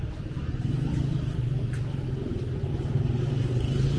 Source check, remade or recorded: remade